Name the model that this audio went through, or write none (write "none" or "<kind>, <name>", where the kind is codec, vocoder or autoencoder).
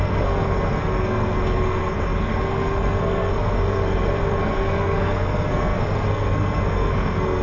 codec, SNAC